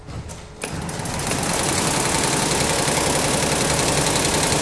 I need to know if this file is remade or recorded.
recorded